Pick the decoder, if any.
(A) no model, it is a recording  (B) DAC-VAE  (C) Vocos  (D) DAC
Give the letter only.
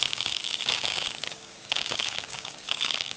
D